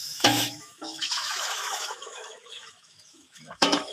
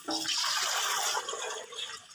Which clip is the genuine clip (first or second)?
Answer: second